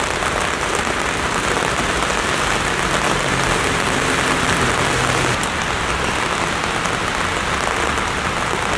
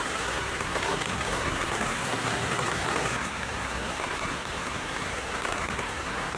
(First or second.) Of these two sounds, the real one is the first